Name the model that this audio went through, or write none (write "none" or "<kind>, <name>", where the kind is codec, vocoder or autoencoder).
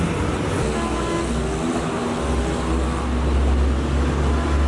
none